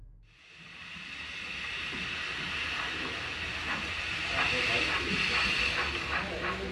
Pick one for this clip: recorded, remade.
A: recorded